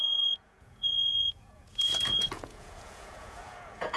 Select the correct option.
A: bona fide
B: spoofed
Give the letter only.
B